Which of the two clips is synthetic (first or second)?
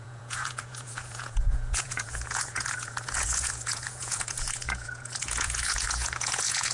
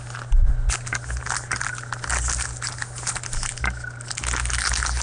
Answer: first